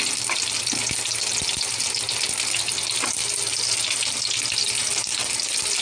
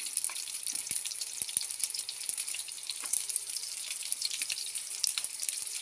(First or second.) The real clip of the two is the first